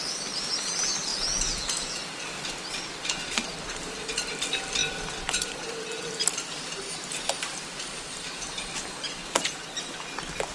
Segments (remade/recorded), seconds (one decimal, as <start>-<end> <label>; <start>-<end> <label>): 0.0-1.1 recorded; 1.1-2.0 remade; 2.0-10.5 recorded